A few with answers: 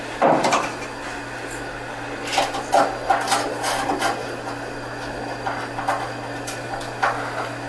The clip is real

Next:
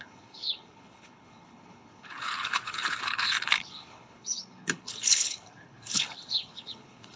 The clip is fake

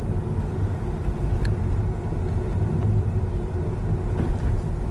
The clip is real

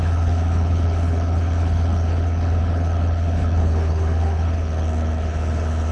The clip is fake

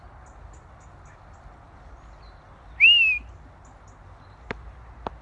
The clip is real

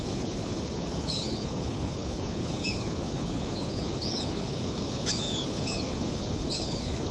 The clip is fake